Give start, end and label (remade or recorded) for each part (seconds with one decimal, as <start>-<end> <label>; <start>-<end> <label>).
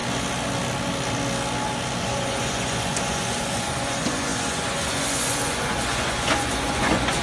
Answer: 0.0-2.0 recorded; 2.0-7.2 remade